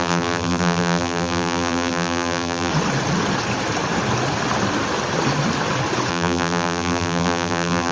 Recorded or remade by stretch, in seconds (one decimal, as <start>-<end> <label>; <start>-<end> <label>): 0.0-2.7 remade; 2.7-6.1 recorded; 6.1-7.9 remade